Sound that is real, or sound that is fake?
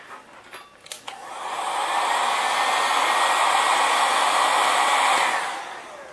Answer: real